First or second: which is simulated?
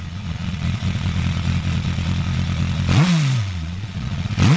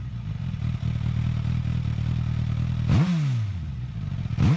first